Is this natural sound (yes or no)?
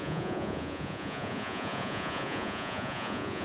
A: no